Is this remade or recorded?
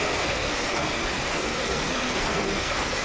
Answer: remade